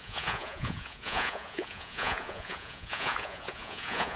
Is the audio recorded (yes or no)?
no